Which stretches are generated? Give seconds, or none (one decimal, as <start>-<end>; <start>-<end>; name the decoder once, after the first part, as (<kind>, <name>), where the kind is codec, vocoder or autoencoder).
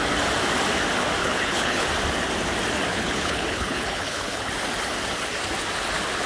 1.2-1.9 (codec, HILCodec); 2.9-4.5